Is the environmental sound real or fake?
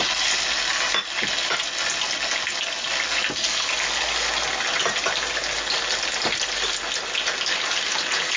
real